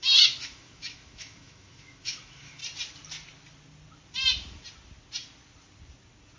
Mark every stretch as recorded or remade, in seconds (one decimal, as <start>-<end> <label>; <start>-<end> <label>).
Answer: 0.0-2.6 remade; 2.6-6.4 recorded